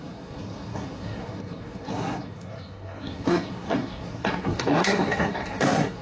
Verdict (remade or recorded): remade